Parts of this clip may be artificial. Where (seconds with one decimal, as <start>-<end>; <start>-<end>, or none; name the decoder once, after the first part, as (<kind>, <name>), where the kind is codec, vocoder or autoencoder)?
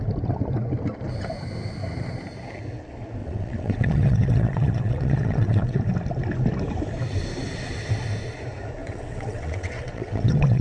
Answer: 3.2-5.8 (vocoder, WaveNeXt); 8.8-10.6